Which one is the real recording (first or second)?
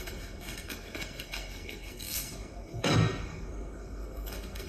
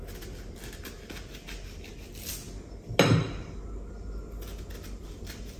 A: second